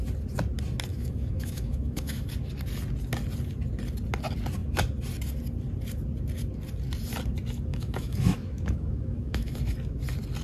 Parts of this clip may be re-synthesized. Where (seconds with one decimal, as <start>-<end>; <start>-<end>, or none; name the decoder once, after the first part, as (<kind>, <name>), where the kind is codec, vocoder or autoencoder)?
0.9-2.3 (autoencoder, DAC-VAE); 7.7-9.6